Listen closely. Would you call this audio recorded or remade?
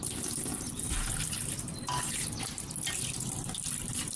recorded